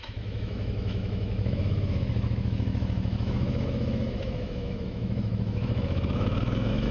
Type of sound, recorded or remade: remade